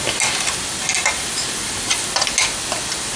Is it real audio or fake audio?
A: real